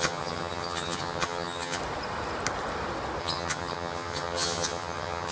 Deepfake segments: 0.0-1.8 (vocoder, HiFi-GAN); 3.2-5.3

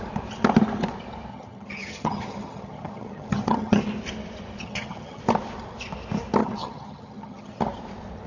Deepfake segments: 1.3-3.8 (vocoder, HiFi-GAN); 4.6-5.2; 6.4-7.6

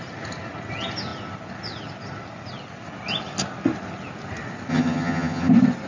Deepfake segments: 4.7-5.5 (vocoder, HiFi-GAN)

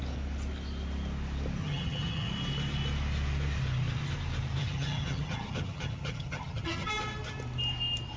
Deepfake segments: 1.6-2.3 (vocoder, HiFi-GAN); 4.6-6.9